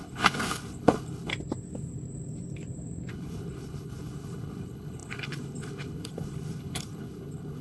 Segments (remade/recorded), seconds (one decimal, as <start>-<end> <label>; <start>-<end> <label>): 0.0-1.3 remade; 1.3-3.1 recorded; 3.1-7.6 remade